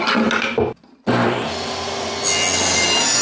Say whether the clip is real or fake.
real